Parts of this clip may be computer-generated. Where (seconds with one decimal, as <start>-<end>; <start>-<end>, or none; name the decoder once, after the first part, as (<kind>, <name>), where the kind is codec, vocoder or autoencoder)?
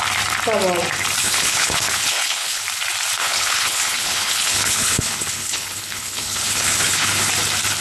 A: 1.2-2.6 (codec, HILCodec); 3.2-7.3